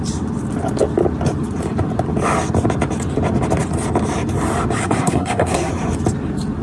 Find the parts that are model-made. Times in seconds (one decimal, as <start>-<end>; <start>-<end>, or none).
4.8-5.7